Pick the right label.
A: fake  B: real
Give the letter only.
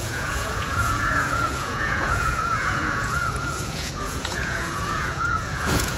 A